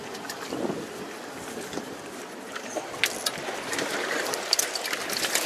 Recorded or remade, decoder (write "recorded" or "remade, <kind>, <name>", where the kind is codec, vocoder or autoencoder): recorded